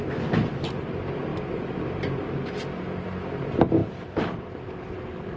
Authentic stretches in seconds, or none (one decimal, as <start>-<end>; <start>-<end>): 0.0-5.4